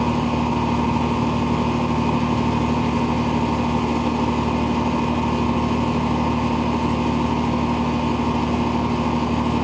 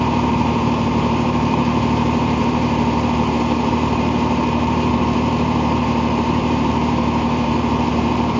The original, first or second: first